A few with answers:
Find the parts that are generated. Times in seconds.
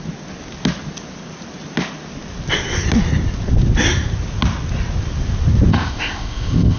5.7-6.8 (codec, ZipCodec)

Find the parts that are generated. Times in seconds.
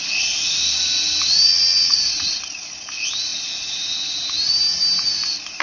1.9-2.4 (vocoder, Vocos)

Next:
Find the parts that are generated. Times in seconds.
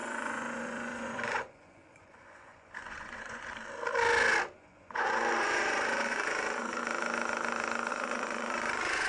0.0-3.5 (vocoder, Vocos); 4.4-6.8; 7.9-9.1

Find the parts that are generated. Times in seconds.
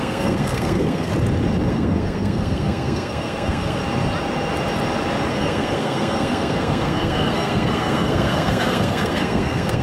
0.0-1.1 (codec, SNAC); 1.7-3.8; 5.3-9.8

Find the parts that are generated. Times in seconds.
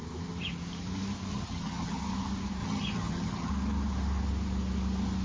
1.3-2.0 (vocoder, HiFi-GAN); 2.6-3.5